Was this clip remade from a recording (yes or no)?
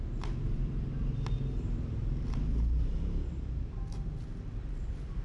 yes